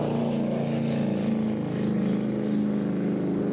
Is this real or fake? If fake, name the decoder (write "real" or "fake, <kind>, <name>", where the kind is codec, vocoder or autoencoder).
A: real